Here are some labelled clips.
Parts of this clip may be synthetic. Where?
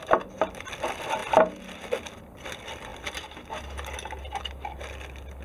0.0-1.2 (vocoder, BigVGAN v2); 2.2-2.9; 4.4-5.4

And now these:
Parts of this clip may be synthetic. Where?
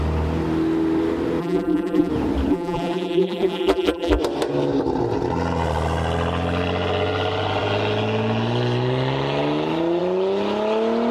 1.4-2.1 (vocoder, BigVGAN v2); 2.5-4.2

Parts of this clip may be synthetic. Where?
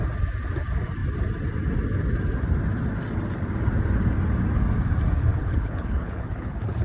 5.3-6.8 (codec, HILCodec)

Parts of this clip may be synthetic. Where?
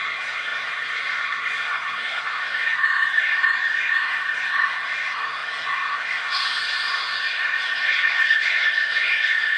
0.0-9.6 (codec, SNAC)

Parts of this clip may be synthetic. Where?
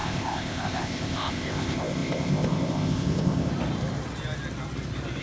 0.0-3.5 (codec, ZipCodec)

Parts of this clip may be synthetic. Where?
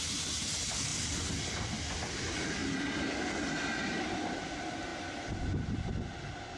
none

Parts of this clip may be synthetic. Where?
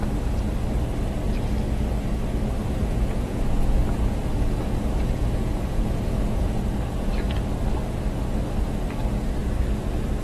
2.6-6.6 (vocoder, Vocos)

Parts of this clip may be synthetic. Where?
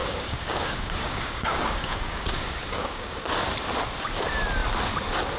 0.0-3.2 (codec, DAC)